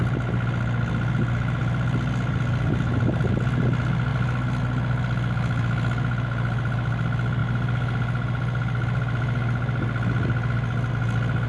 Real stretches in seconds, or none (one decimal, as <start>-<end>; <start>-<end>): 0.0-11.5